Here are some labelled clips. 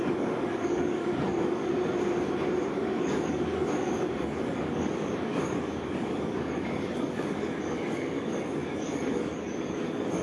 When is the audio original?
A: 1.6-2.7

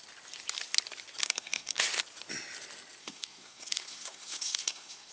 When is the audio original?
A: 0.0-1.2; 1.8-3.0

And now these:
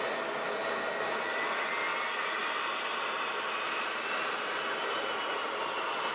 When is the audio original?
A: 0.0-6.1

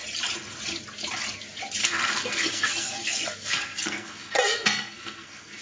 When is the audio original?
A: 0.0-1.8

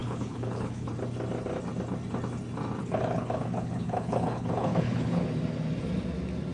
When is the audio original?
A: 0.9-2.8; 5.2-6.5

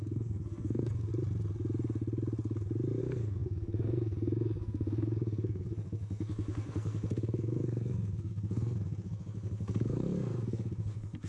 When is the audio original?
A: 1.1-3.0

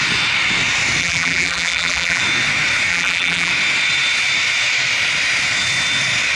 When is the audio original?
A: 0.0-1.0; 2.2-2.9; 3.5-6.4

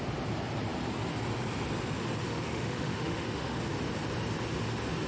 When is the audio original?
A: 0.0-2.3; 3.6-5.1